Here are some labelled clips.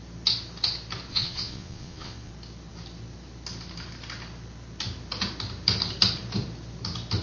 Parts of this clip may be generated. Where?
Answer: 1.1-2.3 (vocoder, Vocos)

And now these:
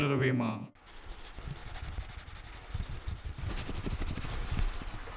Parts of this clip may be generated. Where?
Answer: 0.0-0.7 (vocoder, Vocos)

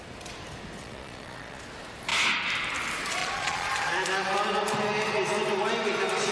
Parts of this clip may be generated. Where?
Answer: 0.8-1.6 (vocoder, Vocos); 3.2-3.7

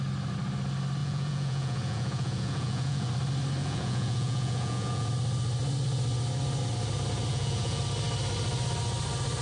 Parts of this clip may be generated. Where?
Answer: 1.0-3.1 (vocoder, Vocos); 3.6-5.1; 7.3-7.8

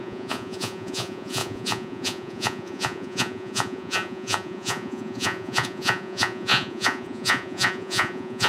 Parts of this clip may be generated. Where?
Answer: 0.0-8.5 (vocoder, Vocos)

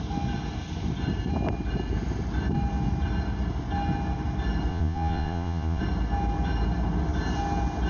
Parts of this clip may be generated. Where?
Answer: 4.7-5.8 (vocoder, Vocos)

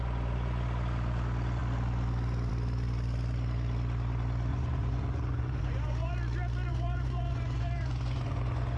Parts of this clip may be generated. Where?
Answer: 4.5-6.1 (vocoder, Vocos); 6.7-8.8